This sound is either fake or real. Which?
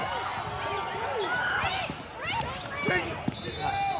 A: real